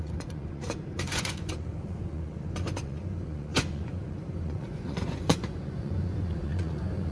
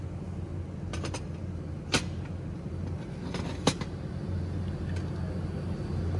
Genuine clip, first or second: second